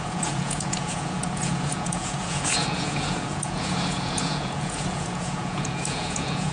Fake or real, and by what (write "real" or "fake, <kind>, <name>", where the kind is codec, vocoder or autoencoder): fake, vocoder, Vocos